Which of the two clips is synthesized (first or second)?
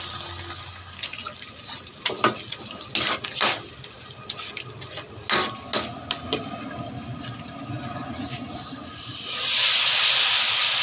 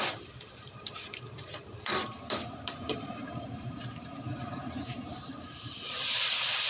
second